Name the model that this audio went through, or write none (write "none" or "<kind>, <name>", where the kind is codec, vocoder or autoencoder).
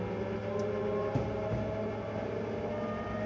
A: none